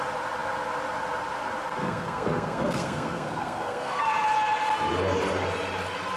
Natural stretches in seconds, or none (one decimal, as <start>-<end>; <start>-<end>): 0.0-1.8; 4.0-6.2